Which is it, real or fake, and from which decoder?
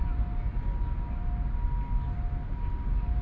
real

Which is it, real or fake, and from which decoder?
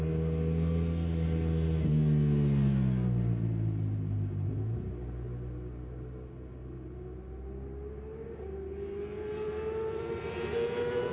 real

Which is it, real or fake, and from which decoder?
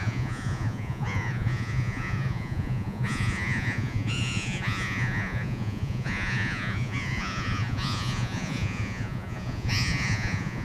fake, vocoder, Vocos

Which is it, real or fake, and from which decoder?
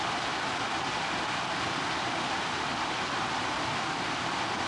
real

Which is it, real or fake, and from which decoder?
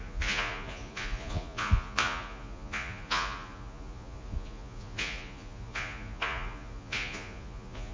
fake, vocoder, Vocos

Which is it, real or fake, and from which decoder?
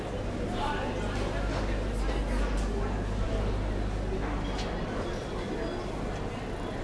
real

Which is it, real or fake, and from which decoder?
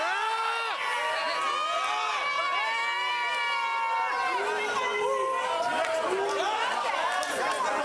real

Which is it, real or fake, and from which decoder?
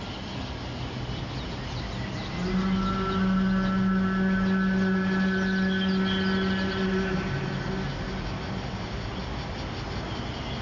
real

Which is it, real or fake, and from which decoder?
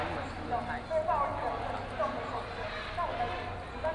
real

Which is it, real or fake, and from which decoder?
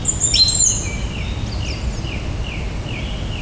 real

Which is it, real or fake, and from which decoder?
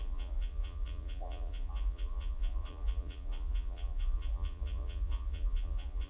fake, vocoder, Vocos